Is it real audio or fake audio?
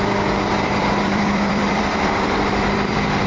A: fake